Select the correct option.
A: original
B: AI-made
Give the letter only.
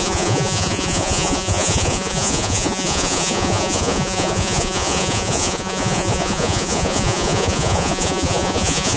B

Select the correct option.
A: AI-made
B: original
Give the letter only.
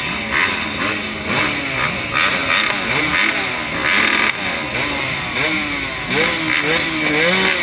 B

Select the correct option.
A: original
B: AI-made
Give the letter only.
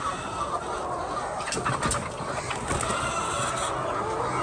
A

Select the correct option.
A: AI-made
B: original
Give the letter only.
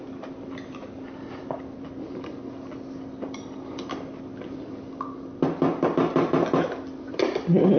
B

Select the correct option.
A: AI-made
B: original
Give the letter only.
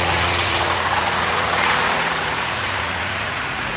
A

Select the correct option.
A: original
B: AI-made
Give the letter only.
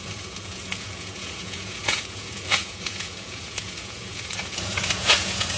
B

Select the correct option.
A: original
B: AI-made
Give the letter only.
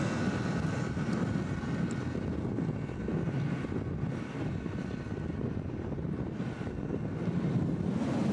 A